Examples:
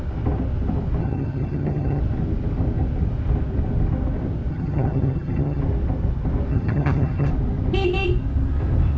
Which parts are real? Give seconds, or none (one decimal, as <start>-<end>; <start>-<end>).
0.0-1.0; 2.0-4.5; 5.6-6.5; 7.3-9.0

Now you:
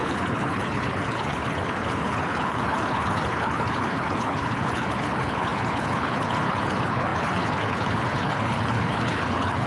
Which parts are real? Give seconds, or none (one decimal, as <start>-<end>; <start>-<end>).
none

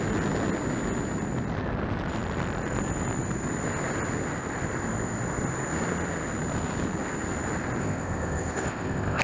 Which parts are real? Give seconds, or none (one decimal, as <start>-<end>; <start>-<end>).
0.0-7.8

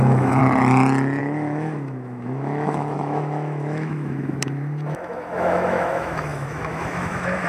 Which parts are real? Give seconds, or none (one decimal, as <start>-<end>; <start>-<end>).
0.4-1.2

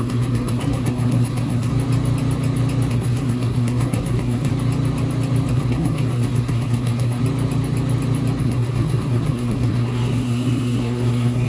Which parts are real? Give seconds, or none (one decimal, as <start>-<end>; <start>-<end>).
1.7-2.9; 4.5-5.5; 7.2-8.4

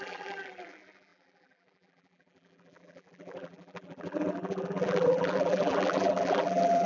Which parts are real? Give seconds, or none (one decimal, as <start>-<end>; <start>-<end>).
none

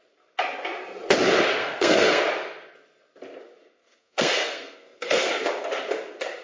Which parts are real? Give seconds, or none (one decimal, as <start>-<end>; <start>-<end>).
0.0-1.6; 2.2-3.8; 5.3-6.4